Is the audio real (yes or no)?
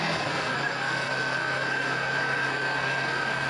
no